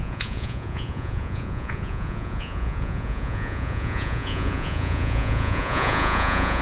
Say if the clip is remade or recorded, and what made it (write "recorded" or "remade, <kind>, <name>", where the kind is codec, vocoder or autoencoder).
remade, vocoder, Vocos